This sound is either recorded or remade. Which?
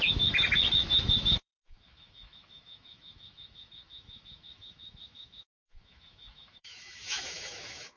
remade